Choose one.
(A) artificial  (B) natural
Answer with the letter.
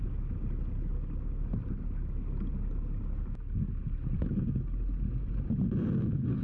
B